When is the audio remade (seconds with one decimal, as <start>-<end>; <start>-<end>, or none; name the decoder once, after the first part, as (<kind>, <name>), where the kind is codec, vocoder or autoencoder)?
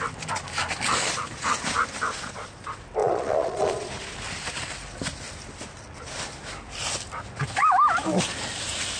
3.0-3.9 (vocoder, Vocos)